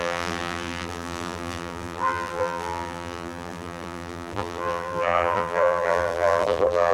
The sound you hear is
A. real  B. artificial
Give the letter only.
B